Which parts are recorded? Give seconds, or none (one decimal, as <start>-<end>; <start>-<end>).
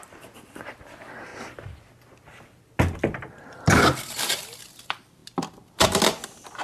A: 1.3-3.0; 5.2-6.6